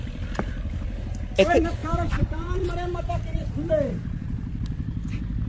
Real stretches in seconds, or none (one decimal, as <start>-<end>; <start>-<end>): 0.0-1.8; 3.6-5.5